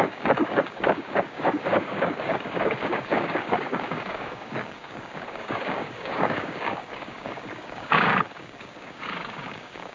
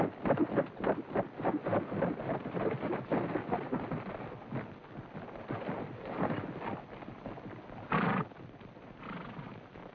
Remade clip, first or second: first